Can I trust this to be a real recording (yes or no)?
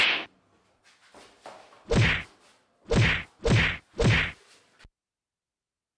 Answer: yes